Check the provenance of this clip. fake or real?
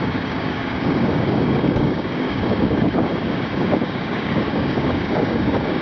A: fake